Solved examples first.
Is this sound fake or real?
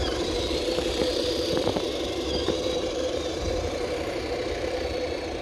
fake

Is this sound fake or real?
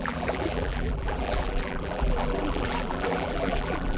fake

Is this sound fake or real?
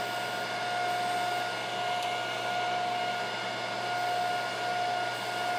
real